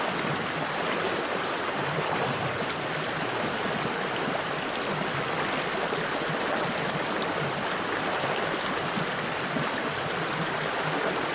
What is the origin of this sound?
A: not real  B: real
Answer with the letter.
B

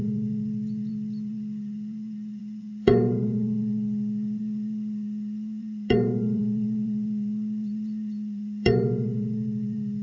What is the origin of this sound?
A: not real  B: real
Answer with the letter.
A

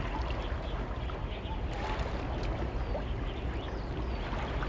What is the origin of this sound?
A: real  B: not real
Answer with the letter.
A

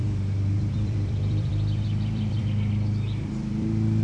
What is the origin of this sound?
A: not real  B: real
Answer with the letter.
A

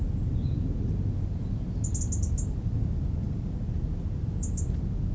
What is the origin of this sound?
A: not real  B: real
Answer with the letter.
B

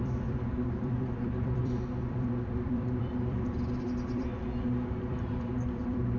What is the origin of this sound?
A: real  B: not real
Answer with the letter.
B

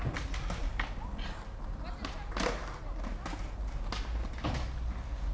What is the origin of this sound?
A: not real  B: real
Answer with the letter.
B